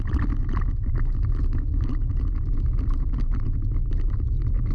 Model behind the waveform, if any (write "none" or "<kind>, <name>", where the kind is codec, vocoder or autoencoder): none